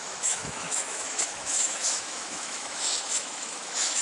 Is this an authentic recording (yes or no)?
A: no